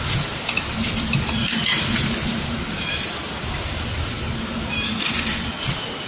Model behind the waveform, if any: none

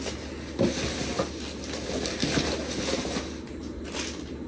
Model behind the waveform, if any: none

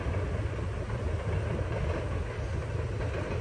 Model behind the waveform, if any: none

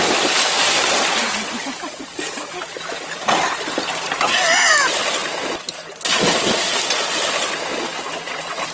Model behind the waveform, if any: none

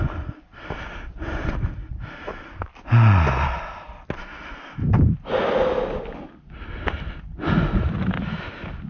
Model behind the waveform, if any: none